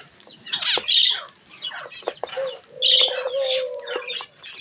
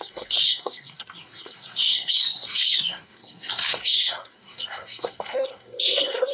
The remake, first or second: second